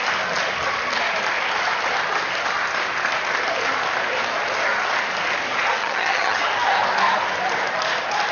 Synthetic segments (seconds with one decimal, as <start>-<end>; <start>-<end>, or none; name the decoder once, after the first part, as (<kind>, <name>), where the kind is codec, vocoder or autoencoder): 5.8-6.4 (vocoder, HiFi-GAN)

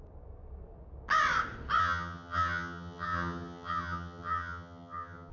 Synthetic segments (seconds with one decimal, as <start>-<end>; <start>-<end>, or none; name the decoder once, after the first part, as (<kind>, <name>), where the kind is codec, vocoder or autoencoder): 1.8-5.3 (vocoder, HiFi-GAN)

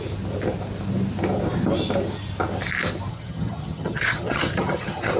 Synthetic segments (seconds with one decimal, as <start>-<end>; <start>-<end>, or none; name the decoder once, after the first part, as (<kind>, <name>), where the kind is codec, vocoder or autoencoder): 3.1-5.2 (vocoder, HiFi-GAN)

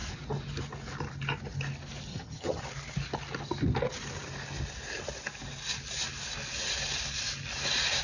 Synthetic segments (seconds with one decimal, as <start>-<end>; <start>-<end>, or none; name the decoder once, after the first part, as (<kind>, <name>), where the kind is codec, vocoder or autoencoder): 2.1-2.6 (vocoder, HiFi-GAN)

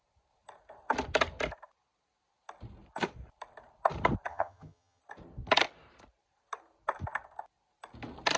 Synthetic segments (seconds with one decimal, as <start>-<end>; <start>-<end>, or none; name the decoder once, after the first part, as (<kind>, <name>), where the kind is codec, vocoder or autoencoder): 4.3-5.0 (vocoder, HiFi-GAN)

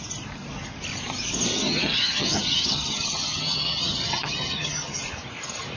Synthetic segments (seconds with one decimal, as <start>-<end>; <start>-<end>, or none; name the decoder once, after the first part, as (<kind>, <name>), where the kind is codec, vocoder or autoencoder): 1.5-5.0 (vocoder, HiFi-GAN)

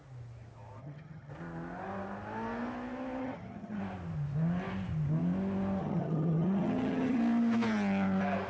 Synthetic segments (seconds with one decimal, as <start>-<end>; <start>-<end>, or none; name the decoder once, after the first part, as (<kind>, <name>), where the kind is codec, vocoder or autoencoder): 0.8-1.3 (vocoder, HiFi-GAN); 3.2-3.8; 5.8-7.2

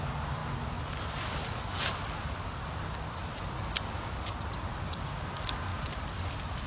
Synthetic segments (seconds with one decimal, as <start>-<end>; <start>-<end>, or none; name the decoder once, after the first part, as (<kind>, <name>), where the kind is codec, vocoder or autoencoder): none